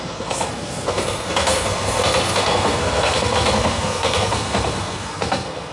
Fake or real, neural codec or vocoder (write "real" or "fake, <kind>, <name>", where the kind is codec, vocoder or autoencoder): fake, codec, SNAC